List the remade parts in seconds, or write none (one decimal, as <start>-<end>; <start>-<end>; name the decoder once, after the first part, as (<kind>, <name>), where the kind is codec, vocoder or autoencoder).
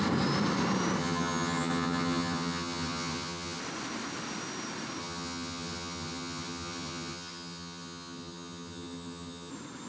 1.0-3.6 (vocoder, HiFi-GAN); 5.0-9.5